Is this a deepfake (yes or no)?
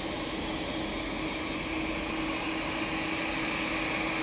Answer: no